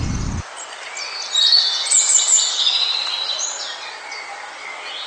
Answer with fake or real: real